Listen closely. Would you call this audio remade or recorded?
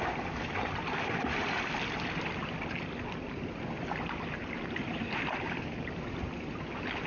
recorded